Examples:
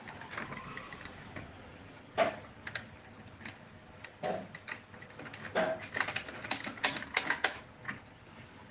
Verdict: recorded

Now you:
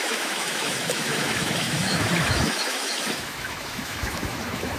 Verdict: remade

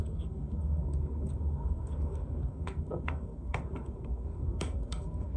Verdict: remade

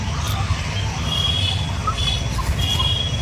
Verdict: recorded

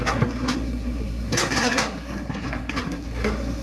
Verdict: remade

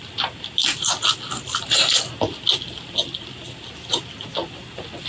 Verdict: recorded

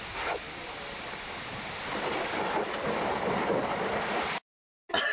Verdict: recorded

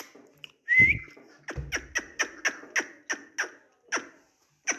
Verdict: recorded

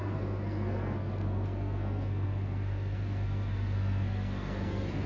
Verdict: remade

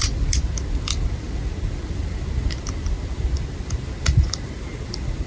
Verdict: recorded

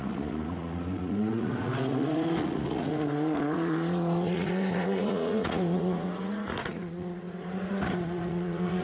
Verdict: remade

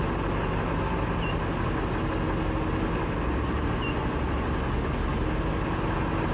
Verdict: recorded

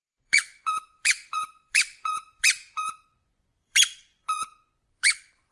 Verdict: remade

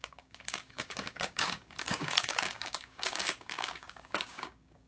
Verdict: remade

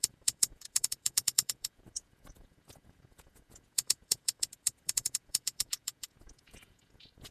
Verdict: remade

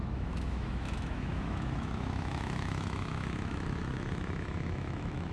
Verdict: remade